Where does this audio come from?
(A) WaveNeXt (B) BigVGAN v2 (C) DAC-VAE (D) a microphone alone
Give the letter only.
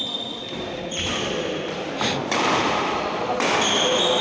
D